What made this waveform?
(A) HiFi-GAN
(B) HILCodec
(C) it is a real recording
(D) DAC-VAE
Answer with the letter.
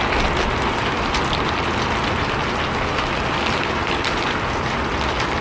C